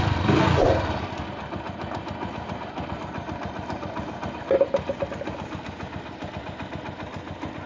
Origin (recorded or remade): recorded